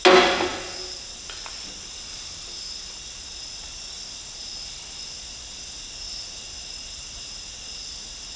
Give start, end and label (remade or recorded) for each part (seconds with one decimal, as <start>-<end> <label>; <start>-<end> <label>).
0.0-8.4 recorded